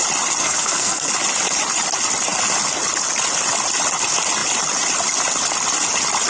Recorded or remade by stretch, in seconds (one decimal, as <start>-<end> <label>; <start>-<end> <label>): 0.0-0.4 recorded; 0.4-1.1 remade; 1.1-6.3 recorded